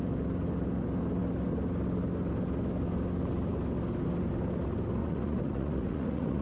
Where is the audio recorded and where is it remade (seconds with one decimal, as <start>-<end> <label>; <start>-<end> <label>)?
0.0-5.0 recorded; 5.0-6.4 remade